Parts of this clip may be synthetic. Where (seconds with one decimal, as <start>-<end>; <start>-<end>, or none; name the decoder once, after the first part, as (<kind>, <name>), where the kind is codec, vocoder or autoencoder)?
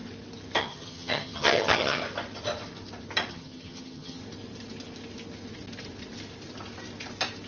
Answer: 0.6-2.0 (vocoder, HiFi-GAN); 3.3-4.2